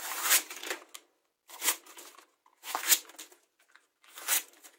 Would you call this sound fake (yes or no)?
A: no